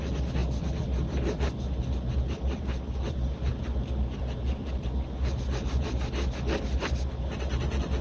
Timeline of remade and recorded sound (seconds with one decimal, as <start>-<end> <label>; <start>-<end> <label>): 0.0-8.0 recorded